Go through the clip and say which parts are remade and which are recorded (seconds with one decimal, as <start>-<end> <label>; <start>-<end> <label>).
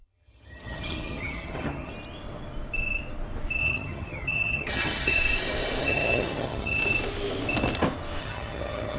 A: 0.0-1.9 remade; 1.9-3.6 recorded; 3.6-5.2 remade; 5.2-5.8 recorded; 5.8-6.8 remade; 6.8-8.2 recorded; 8.2-9.0 remade